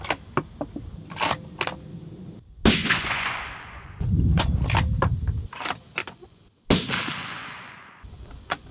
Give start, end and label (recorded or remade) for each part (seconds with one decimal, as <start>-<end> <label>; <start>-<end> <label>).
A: 0.0-2.8 recorded; 2.8-4.5 remade; 4.5-6.0 recorded; 6.0-6.5 remade; 6.5-7.2 recorded; 7.2-8.7 remade